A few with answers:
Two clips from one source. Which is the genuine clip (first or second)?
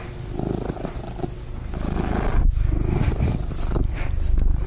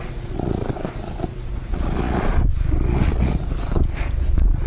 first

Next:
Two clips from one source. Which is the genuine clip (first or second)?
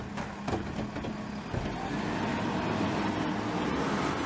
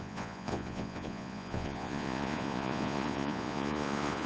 first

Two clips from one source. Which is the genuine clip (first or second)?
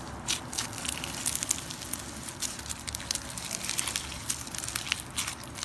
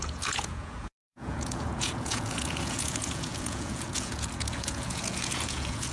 first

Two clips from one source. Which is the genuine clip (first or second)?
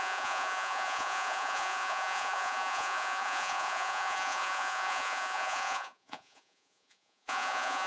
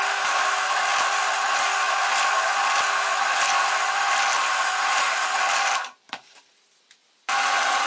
second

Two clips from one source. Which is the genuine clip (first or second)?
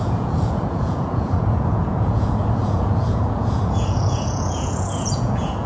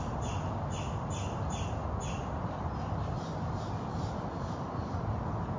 second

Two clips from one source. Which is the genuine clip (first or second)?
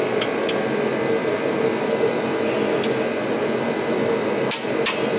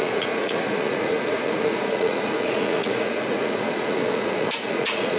first